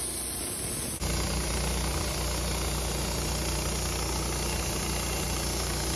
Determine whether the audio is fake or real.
real